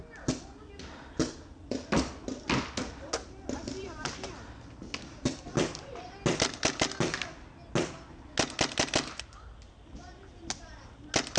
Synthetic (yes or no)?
no